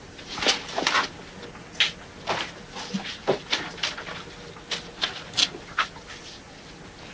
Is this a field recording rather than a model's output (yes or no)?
yes